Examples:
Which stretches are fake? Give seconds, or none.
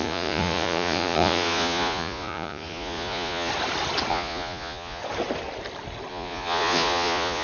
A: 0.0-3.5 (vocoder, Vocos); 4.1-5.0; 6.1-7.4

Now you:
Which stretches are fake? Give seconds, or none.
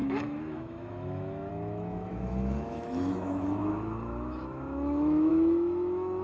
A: 0.0-6.2 (autoencoder, DAC-VAE)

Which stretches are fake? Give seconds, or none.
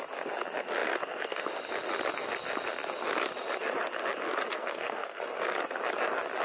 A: 4.6-5.2 (codec, SNAC)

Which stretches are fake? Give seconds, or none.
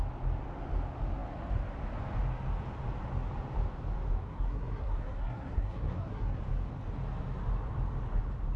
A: 4.3-6.4 (codec, SNAC)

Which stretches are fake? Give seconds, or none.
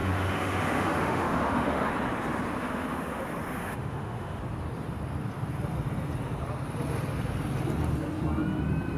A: 0.0-1.9 (autoencoder, DAC-VAE); 2.6-3.2; 3.6-4.4